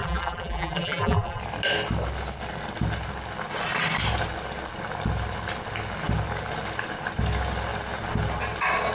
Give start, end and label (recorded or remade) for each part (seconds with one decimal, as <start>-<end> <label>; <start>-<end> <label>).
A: 0.0-1.4 remade; 1.4-8.9 recorded